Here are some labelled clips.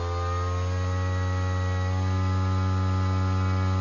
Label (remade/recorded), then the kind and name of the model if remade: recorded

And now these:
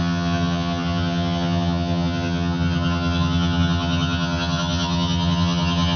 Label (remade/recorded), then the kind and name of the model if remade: remade, vocoder, HiFi-GAN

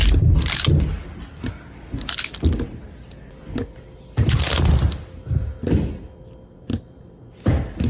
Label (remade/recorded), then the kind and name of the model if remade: recorded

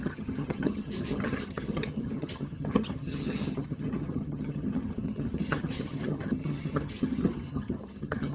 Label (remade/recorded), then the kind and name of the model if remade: remade, vocoder, HiFi-GAN